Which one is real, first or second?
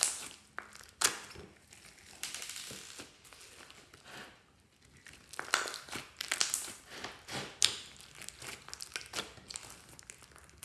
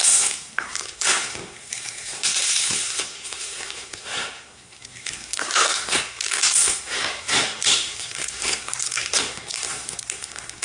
first